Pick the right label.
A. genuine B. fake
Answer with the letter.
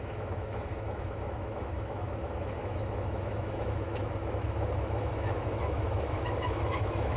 B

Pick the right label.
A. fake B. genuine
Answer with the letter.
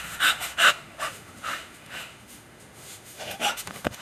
A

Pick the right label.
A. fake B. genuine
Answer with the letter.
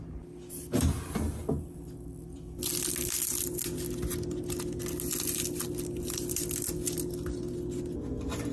B